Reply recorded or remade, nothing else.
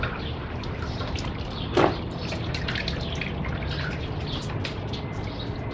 recorded